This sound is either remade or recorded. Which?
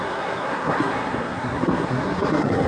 remade